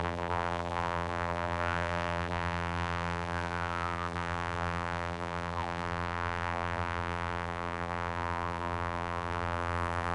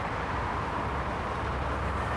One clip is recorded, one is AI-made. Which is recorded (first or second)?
second